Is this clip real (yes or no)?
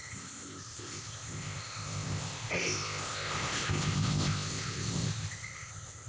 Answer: no